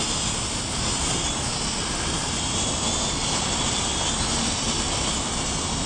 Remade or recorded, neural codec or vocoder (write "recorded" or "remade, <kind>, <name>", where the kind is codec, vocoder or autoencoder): recorded